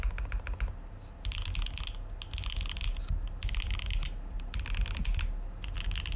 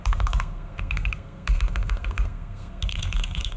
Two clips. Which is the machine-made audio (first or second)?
second